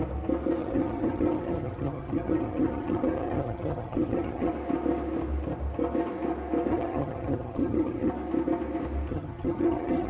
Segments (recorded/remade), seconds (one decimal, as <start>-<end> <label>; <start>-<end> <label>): 0.0-0.6 recorded; 0.6-4.5 remade; 4.5-6.7 recorded; 6.7-8.1 remade; 8.1-9.1 recorded; 9.1-10.1 remade